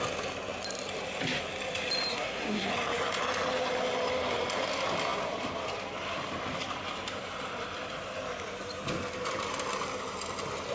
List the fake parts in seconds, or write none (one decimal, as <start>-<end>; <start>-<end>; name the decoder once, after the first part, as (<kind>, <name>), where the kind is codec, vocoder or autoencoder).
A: 2.1-2.7 (codec, SNAC)